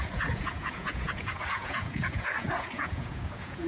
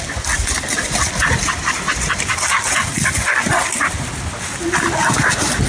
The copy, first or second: first